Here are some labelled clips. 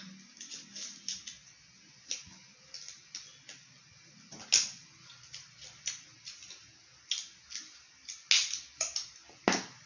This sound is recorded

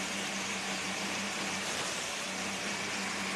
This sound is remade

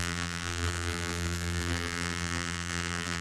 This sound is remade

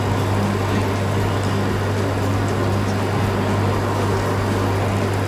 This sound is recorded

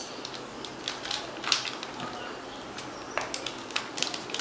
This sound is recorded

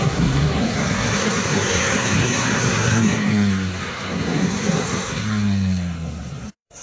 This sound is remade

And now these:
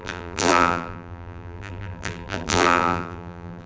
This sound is remade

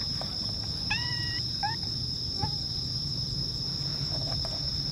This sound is remade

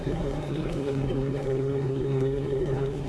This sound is remade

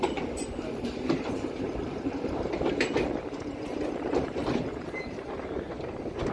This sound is remade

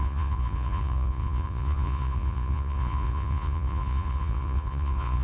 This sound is remade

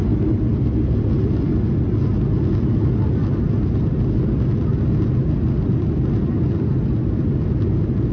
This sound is recorded